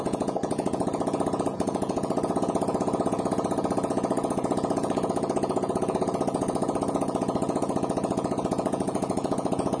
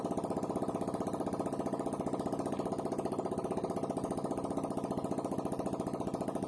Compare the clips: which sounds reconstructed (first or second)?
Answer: first